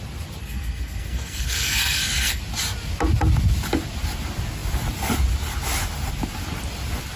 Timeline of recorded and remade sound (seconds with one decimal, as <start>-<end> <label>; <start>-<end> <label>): 0.0-0.4 recorded; 0.4-2.4 remade; 2.4-7.2 recorded